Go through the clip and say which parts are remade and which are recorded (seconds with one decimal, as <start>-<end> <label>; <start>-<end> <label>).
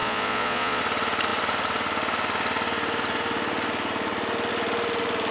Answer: 0.0-0.8 remade; 0.8-5.3 recorded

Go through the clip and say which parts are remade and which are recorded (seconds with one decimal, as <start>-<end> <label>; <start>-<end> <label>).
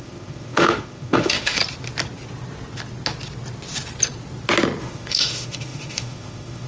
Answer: 0.0-1.6 remade; 1.6-4.8 recorded; 4.8-6.7 remade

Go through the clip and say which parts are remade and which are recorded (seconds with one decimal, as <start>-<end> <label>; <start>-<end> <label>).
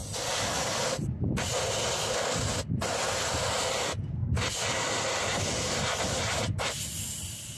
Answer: 0.0-7.6 recorded